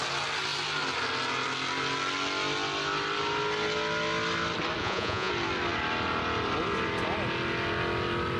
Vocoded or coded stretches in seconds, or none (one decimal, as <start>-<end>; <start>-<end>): 4.8-5.3